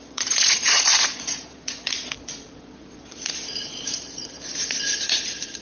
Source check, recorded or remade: remade